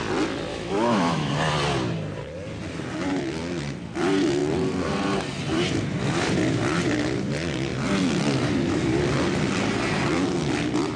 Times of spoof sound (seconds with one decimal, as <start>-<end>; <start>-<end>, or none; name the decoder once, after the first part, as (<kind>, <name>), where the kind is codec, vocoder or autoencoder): 0.5-1.3 (autoencoder, DAC-VAE)